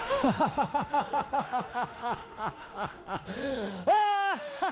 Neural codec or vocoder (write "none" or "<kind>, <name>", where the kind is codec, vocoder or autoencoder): autoencoder, DAC-VAE